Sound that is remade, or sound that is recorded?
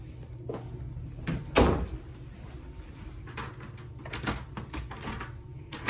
recorded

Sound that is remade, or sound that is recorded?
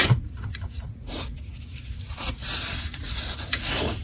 remade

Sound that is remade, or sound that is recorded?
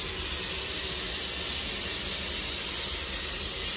recorded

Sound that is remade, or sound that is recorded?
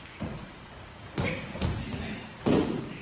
remade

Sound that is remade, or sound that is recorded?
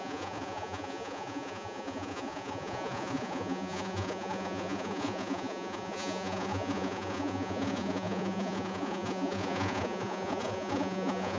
remade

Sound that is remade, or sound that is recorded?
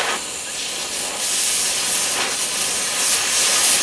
recorded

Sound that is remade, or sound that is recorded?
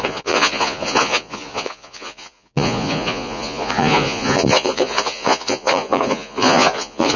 remade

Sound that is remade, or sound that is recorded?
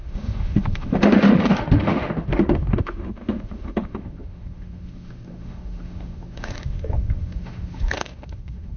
remade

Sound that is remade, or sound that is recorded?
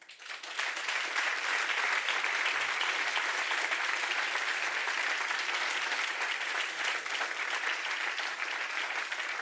recorded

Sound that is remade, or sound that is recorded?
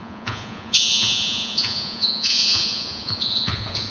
remade